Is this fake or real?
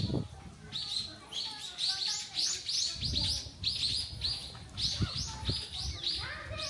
real